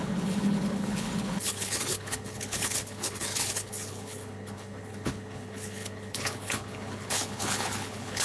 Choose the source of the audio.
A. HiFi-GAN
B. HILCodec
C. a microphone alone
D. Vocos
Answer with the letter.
B